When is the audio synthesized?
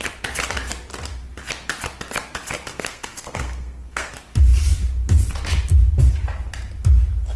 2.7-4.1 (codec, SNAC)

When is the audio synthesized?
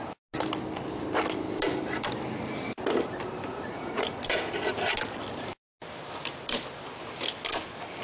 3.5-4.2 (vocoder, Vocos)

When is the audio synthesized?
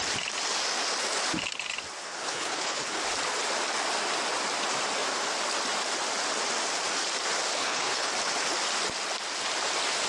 2.0-3.0 (codec, HILCodec); 7.6-8.1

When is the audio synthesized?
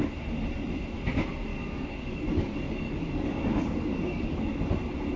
1.5-4.6 (codec, DAC)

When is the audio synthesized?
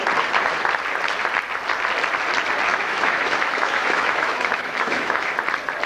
2.7-5.3 (autoencoder, DAC-VAE)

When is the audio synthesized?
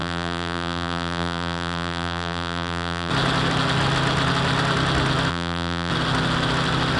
0.0-3.1 (vocoder, BigVGAN v2); 5.3-5.9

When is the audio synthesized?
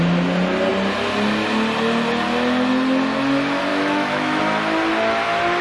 3.7-4.4 (autoencoder, DAC-VAE)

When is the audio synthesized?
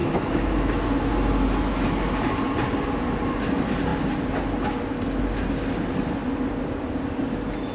0.0-0.7 (autoencoder, DAC-VAE)